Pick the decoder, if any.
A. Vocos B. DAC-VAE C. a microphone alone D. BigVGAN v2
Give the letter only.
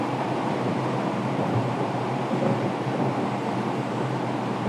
D